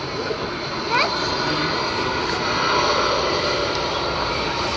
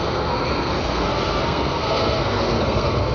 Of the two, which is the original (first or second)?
first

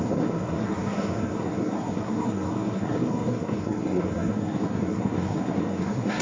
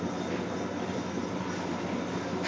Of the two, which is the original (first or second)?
second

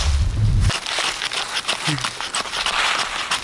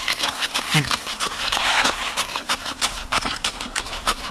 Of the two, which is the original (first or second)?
first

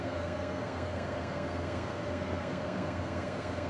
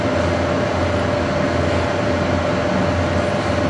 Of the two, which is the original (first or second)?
second